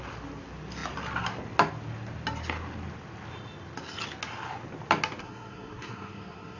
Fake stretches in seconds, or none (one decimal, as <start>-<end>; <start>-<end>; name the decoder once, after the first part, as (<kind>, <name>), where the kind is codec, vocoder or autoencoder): 5.2-6.6 (codec, SNAC)